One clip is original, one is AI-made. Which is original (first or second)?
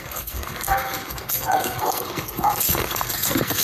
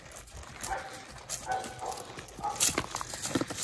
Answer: second